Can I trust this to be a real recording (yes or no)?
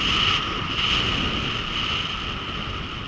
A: yes